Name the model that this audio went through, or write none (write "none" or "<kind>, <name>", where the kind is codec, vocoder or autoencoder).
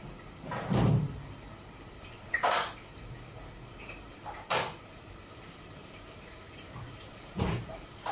vocoder, BigVGAN v2